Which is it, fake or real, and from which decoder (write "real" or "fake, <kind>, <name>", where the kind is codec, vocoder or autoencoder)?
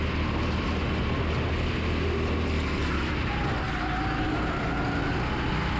real